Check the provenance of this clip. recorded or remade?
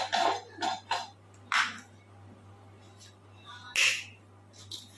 recorded